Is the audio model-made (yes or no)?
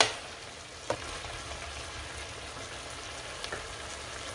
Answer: no